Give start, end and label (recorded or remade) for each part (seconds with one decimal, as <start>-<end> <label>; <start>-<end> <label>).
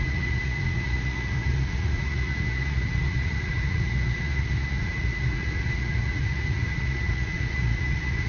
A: 0.0-8.3 remade